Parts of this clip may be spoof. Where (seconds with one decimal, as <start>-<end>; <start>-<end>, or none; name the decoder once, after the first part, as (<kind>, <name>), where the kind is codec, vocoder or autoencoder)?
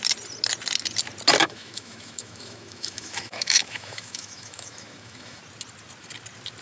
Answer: 1.4-5.4 (autoencoder, DAC-VAE)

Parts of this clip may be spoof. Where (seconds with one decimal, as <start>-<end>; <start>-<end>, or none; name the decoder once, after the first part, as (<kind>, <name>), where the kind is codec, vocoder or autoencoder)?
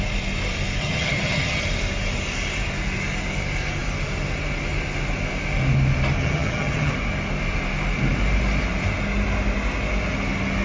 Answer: 0.8-1.6 (vocoder, HiFi-GAN); 6.2-6.9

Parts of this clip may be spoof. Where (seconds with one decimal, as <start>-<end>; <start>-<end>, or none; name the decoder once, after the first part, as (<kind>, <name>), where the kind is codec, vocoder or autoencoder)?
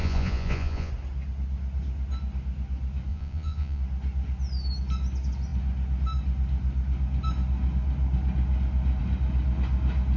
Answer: 0.0-0.9 (vocoder, Vocos); 3.1-3.8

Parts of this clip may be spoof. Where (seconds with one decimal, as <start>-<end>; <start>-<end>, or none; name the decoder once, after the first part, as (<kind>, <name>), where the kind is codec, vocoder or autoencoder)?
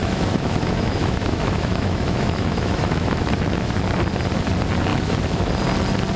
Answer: 0.0-3.7 (autoencoder, DAC-VAE); 4.9-5.5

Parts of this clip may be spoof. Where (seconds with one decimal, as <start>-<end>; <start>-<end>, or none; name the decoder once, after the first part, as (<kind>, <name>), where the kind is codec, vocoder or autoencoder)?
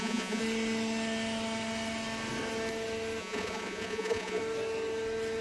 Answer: 0.0-0.4 (vocoder, Vocos); 3.2-4.4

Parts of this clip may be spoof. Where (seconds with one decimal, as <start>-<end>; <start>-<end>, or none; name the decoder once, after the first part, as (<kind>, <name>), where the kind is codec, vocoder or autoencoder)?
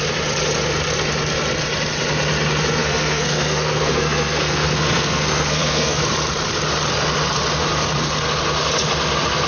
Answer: 2.8-6.0 (codec, SNAC)